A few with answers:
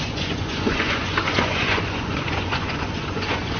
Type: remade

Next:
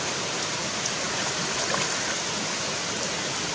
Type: recorded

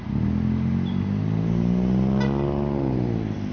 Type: recorded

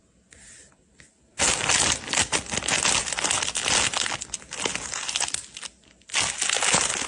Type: recorded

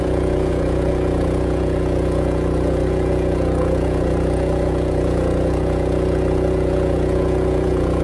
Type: remade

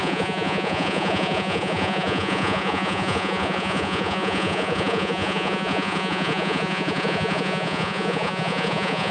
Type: remade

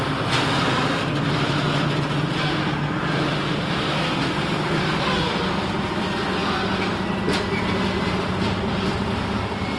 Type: recorded